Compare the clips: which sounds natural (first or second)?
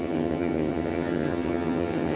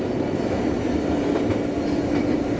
second